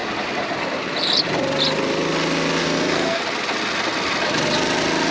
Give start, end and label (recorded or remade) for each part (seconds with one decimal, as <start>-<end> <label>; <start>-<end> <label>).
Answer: 0.0-2.6 recorded; 2.6-3.2 remade; 3.2-5.1 recorded